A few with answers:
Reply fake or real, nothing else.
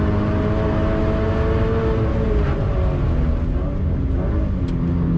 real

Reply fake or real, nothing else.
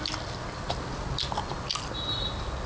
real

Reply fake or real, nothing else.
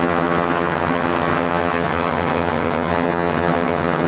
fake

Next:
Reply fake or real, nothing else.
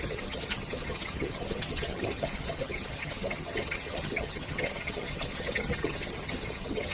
fake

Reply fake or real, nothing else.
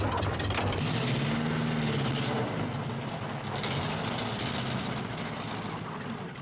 real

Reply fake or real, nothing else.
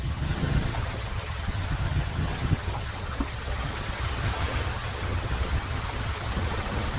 fake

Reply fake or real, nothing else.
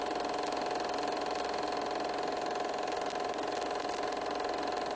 real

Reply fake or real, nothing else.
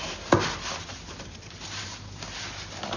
real